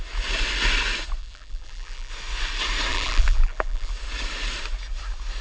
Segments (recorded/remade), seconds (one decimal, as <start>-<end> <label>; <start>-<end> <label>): 0.0-1.2 recorded; 1.2-2.1 remade; 2.1-2.9 recorded; 2.9-3.9 remade; 3.9-5.4 recorded